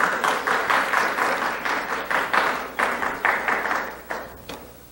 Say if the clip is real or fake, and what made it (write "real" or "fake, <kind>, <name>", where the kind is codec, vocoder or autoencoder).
real